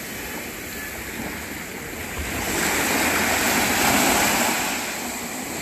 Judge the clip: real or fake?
real